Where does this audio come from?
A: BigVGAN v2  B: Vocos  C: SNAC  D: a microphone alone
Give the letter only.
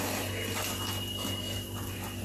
D